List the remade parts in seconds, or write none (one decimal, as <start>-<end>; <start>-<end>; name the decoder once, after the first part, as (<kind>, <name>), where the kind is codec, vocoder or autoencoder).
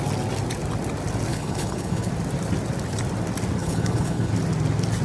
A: 1.3-2.1 (codec, HILCodec); 3.6-4.3